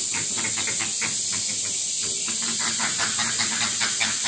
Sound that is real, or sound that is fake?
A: real